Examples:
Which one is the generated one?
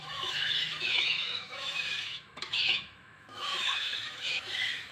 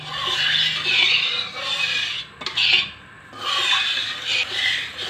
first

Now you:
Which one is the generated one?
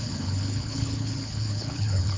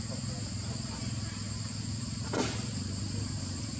first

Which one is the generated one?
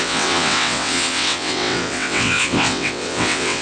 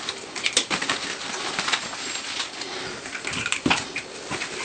first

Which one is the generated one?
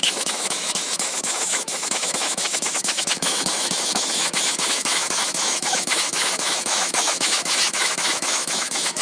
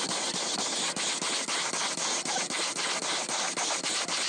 first